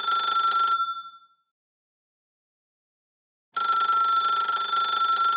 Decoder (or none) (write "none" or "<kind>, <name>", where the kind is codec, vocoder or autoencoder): none